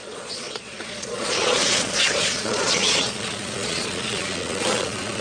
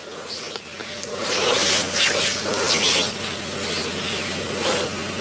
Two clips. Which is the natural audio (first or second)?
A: second